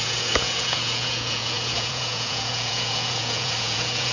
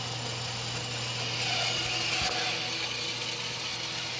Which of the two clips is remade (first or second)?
first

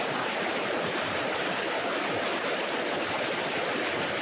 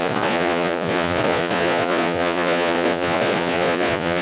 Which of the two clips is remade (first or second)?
second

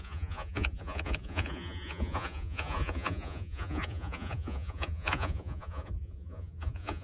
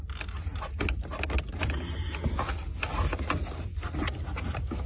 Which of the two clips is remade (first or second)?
first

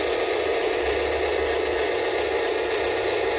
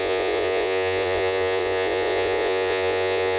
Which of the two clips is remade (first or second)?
second